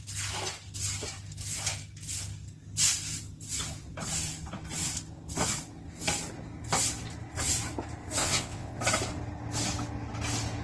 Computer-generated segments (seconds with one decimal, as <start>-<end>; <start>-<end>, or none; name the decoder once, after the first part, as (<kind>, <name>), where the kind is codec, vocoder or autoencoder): 8.2-8.8 (vocoder, WaveNeXt)